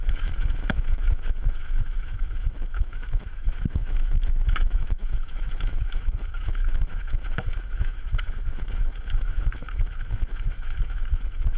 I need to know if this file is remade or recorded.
remade